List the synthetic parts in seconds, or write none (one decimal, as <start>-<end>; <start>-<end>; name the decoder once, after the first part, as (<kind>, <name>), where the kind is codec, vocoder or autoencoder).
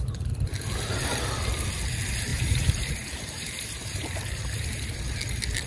2.3-5.2 (vocoder, BigVGAN v2)